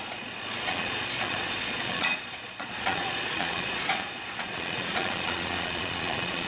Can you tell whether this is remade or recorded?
remade